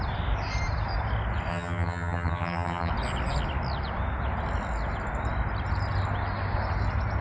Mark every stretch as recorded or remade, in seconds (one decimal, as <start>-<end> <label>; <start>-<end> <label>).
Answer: 0.0-1.5 recorded; 1.5-2.9 remade; 2.9-7.2 recorded